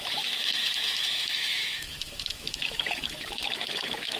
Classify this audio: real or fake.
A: fake